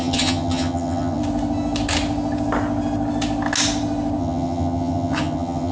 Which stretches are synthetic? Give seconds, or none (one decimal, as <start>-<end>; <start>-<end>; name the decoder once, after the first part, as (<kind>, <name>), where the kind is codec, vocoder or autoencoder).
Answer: 0.0-1.2 (vocoder, HiFi-GAN); 4.2-5.7